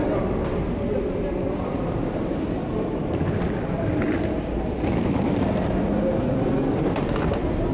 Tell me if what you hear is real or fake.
fake